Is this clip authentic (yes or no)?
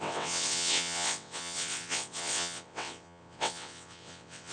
no